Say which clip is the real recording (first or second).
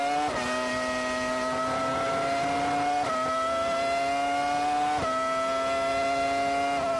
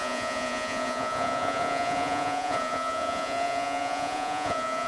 first